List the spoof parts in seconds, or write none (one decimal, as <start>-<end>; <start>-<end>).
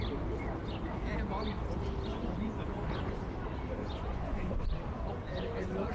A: 2.1-3.2; 3.8-4.7; 5.2-5.9